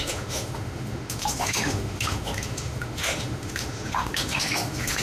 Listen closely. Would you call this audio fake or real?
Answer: fake